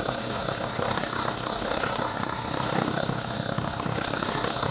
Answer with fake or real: fake